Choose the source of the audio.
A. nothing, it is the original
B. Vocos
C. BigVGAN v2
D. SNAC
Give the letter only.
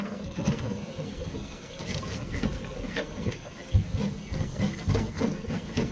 D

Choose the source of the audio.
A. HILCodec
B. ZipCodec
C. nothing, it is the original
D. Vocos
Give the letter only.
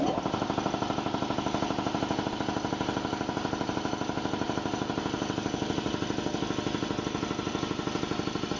C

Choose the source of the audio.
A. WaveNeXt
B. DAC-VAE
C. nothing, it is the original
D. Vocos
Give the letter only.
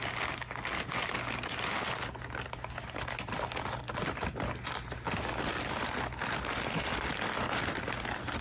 C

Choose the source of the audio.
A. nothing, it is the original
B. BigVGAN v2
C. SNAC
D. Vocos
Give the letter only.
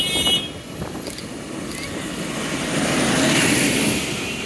A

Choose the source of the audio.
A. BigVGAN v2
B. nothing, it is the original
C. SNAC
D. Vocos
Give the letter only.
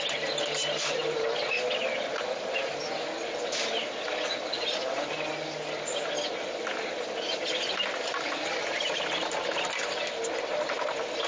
B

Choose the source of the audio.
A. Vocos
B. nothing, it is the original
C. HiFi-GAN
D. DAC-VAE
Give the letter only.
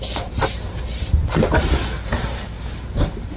B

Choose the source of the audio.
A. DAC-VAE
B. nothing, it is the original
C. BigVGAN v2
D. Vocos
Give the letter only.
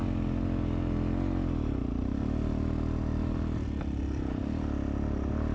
B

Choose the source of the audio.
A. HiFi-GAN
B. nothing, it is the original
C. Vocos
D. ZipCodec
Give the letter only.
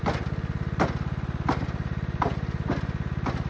B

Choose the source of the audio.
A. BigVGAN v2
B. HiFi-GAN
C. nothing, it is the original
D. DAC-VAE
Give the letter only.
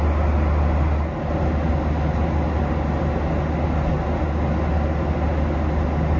C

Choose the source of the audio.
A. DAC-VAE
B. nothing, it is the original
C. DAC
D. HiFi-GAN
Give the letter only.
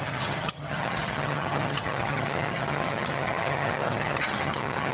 D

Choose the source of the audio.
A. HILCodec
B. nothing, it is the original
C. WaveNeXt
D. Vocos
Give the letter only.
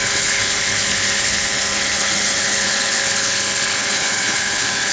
A